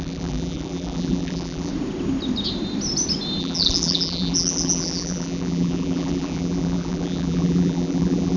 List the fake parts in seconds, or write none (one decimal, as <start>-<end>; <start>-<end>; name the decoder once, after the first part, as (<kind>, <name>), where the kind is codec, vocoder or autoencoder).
0.0-1.7 (vocoder, BigVGAN v2); 3.4-8.4